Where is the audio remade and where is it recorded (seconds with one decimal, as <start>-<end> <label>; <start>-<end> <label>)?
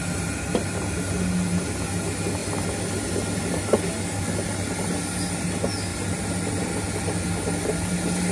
0.0-8.3 recorded